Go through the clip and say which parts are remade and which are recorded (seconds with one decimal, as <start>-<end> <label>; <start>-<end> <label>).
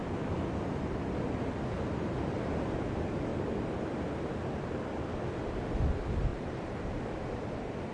0.0-6.3 recorded; 6.3-7.0 remade; 7.0-7.9 recorded